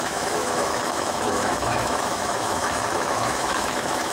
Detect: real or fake fake